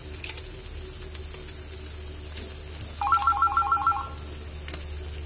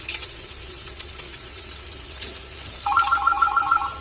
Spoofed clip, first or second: second